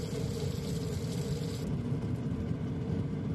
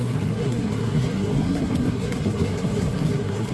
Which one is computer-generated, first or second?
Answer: second